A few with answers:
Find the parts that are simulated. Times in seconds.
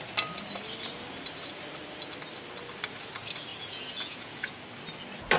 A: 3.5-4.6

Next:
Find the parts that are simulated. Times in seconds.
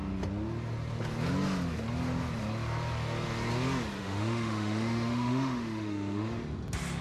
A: 4.0-6.4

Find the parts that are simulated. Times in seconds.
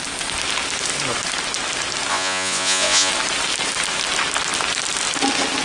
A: 2.1-3.1